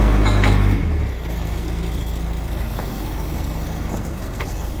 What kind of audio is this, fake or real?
fake